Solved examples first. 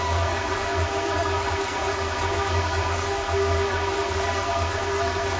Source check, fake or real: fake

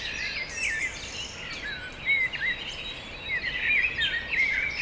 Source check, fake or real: real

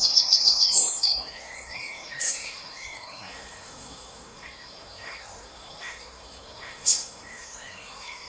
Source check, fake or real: fake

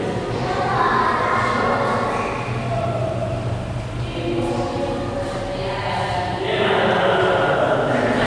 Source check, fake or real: real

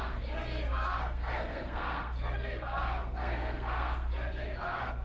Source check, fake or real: fake